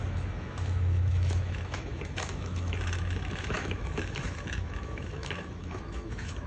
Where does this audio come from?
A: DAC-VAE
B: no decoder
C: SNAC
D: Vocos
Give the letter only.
A